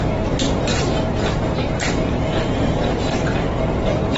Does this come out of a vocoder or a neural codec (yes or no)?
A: yes